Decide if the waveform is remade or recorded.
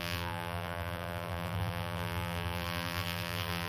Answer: remade